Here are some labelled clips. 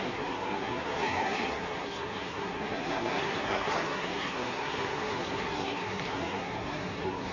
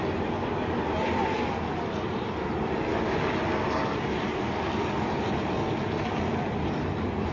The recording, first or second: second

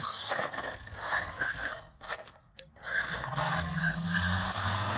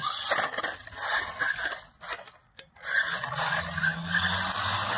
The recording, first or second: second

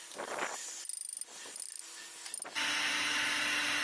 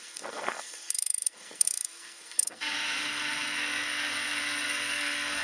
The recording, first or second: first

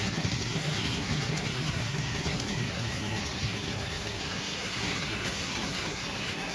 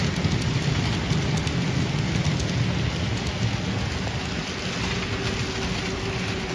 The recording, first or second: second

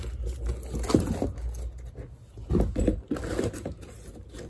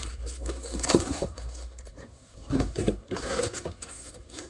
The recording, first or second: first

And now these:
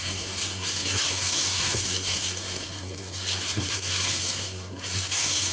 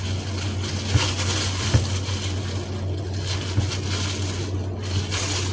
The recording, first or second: second